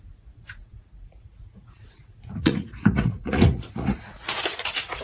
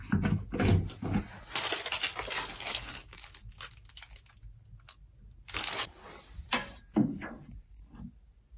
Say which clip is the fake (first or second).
first